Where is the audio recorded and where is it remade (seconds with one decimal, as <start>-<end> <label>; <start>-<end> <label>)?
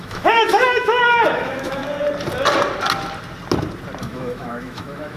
0.0-1.8 remade; 1.8-4.0 recorded; 4.0-5.2 remade